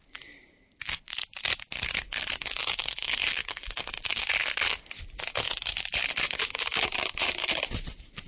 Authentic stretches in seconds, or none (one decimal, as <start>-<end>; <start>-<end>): 0.0-3.3; 4.2-8.3